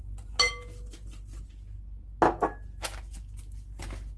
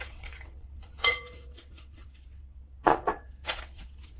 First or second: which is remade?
second